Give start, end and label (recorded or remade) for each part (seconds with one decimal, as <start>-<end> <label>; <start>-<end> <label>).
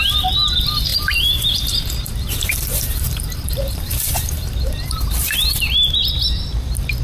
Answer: 0.0-0.9 recorded; 0.9-5.1 remade; 5.1-7.0 recorded